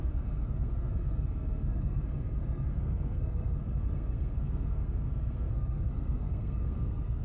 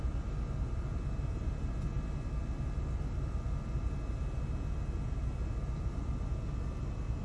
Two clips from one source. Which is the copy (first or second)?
first